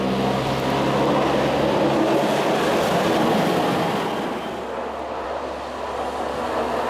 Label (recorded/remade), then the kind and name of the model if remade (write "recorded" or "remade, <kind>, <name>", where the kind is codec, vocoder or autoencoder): recorded